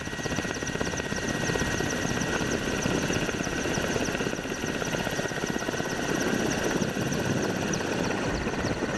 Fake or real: real